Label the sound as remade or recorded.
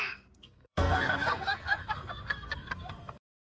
remade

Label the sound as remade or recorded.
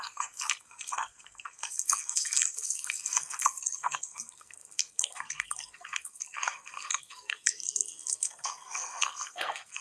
remade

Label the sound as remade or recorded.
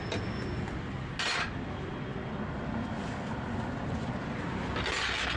recorded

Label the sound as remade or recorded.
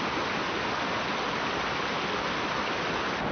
recorded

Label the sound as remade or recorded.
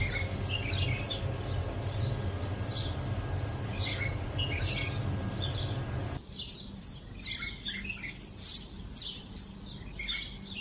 recorded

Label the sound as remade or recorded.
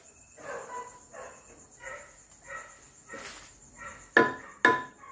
recorded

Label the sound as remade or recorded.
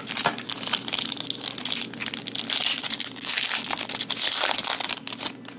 recorded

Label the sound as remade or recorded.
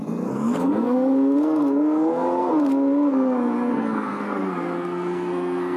remade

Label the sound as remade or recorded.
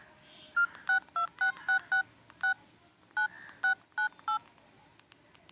recorded